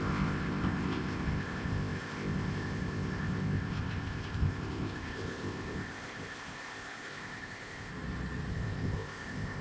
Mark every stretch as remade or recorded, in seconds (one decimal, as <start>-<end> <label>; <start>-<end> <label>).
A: 0.0-7.9 remade; 7.9-8.5 recorded; 8.5-9.6 remade